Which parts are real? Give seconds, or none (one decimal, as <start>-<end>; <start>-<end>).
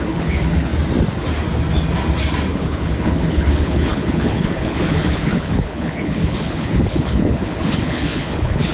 0.7-2.5